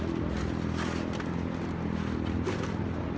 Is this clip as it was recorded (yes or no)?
yes